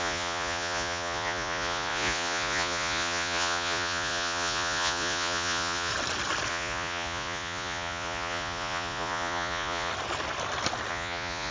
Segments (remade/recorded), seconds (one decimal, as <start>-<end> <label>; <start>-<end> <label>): 0.0-5.9 remade; 5.9-6.5 recorded; 6.5-9.9 remade; 9.9-10.9 recorded; 10.9-11.5 remade